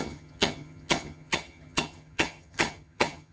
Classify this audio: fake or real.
fake